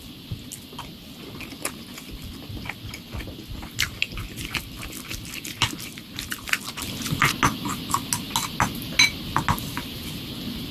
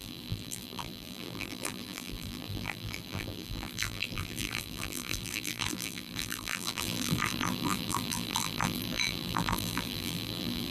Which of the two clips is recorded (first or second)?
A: first